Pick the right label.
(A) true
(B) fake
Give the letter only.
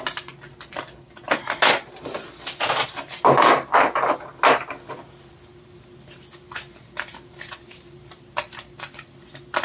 A